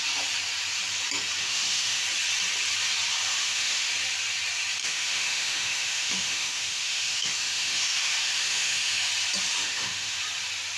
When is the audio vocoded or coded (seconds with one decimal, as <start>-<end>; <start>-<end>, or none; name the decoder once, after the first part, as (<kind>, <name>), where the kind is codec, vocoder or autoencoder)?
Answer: 1.4-2.0 (autoencoder, DAC-VAE); 3.3-3.9; 4.8-9.1; 9.6-10.2